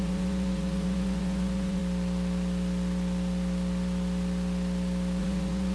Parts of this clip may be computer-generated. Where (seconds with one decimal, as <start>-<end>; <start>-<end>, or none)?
0.0-1.8; 5.2-5.7